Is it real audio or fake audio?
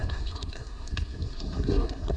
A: fake